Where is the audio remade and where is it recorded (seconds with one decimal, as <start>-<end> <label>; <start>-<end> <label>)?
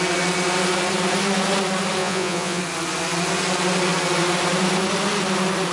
0.0-2.0 recorded; 2.0-2.6 remade; 2.6-5.7 recorded